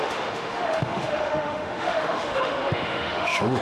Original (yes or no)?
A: no